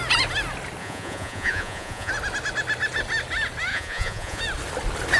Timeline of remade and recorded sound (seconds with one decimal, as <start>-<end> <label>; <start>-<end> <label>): 0.0-0.8 recorded; 0.8-2.1 remade; 2.1-3.7 recorded; 3.7-4.4 remade; 4.4-5.2 recorded